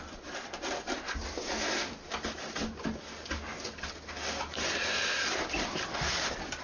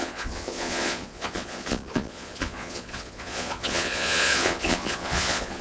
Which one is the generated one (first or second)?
second